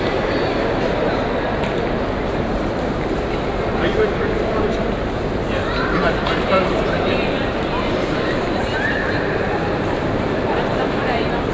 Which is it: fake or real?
fake